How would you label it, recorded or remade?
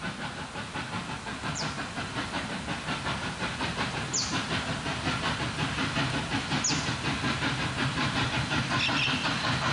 recorded